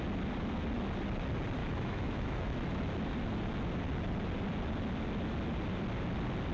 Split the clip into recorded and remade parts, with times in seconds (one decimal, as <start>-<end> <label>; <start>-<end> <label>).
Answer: 0.0-1.6 recorded; 1.6-2.8 remade; 2.8-6.5 recorded

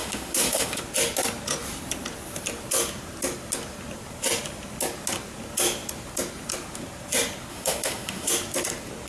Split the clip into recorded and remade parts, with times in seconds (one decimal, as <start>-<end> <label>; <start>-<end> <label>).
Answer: 0.0-0.8 remade; 0.8-7.5 recorded; 7.5-8.3 remade; 8.3-9.1 recorded

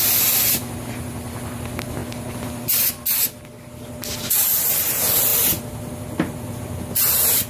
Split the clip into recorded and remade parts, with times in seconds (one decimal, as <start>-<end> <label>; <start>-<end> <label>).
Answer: 0.0-7.5 recorded

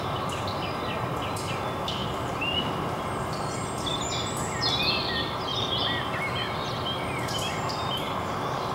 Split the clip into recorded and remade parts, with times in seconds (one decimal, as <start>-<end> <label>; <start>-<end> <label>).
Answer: 0.0-8.7 recorded

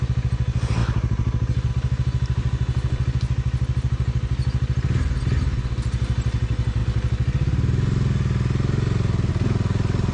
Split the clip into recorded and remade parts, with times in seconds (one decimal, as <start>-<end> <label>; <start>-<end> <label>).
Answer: 0.0-10.1 recorded

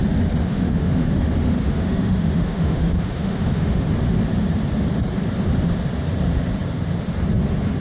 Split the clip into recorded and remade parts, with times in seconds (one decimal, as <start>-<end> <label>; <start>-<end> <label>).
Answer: 0.0-0.4 recorded; 0.4-3.8 remade; 3.8-7.8 recorded

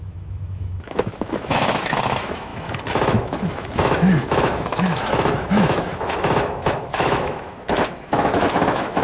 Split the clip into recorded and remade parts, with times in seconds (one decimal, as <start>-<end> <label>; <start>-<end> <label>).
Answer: 0.0-9.0 remade